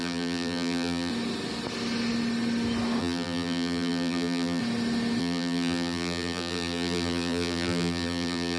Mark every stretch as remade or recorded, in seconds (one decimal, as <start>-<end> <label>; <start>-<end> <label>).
0.0-1.1 remade; 1.1-3.0 recorded; 3.0-4.6 remade; 4.6-5.2 recorded; 5.2-8.6 remade